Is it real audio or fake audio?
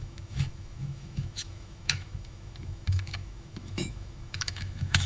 fake